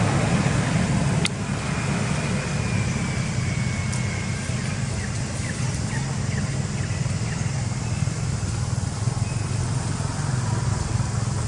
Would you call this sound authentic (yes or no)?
yes